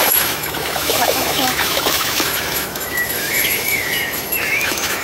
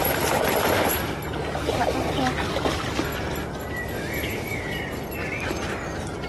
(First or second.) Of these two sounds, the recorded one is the second